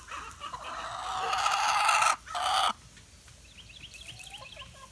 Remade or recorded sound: recorded